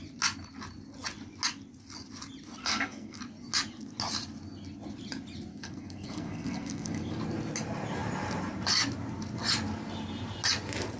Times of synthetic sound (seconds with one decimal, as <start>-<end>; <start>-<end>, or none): 2.6-3.2; 5.5-7.2